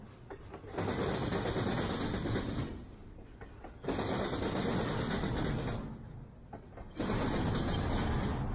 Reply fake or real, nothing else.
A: real